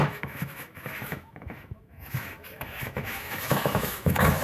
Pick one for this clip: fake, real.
fake